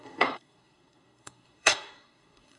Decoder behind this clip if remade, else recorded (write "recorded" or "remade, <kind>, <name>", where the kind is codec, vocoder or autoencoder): remade, codec, SNAC